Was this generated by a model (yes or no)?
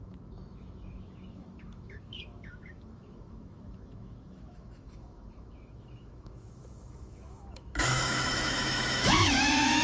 yes